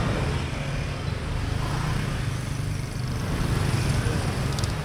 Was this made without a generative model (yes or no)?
yes